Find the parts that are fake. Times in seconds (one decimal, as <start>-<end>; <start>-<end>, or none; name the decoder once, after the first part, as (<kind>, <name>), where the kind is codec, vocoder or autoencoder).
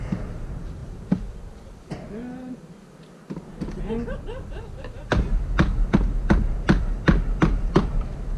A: 5.0-8.4 (vocoder, BigVGAN v2)